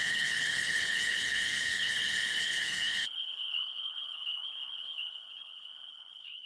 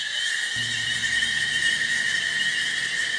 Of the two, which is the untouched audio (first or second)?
second